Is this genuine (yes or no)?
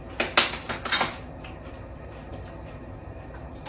yes